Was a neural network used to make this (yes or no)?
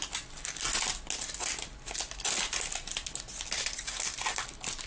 no